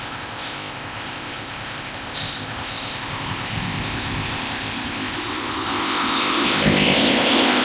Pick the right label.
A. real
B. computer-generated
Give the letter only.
B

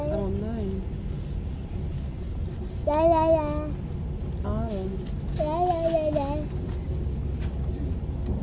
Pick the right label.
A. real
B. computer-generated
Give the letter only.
A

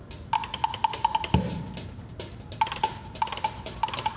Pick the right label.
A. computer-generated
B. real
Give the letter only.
B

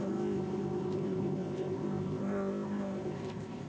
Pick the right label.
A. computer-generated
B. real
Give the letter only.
A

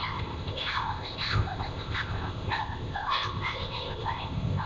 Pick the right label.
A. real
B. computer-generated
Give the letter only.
B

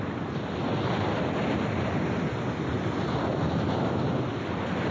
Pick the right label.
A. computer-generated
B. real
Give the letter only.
B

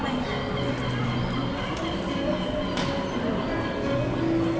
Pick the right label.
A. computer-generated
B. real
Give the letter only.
B